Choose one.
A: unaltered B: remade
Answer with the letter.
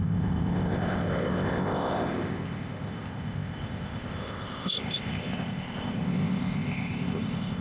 B